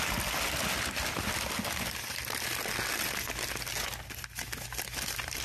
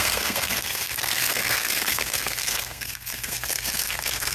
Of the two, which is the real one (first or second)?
first